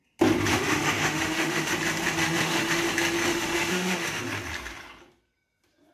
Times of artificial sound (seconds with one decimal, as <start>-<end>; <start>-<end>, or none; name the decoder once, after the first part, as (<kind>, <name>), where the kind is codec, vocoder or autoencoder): 0.5-1.7 (autoencoder, DAC-VAE); 2.2-2.8; 3.3-4.2